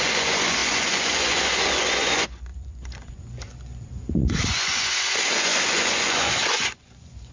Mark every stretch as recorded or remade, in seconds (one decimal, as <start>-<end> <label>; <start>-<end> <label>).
0.0-7.3 remade